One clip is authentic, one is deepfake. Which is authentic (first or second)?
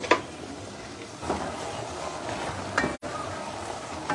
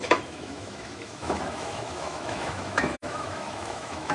first